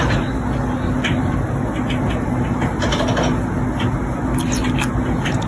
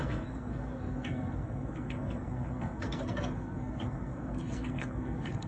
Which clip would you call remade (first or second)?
second